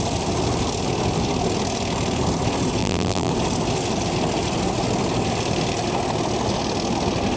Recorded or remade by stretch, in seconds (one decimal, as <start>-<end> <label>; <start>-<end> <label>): 0.0-2.8 recorded; 2.8-3.3 remade; 3.3-7.4 recorded